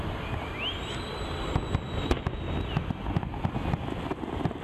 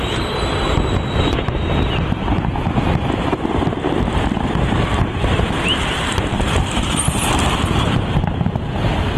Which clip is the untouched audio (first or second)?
first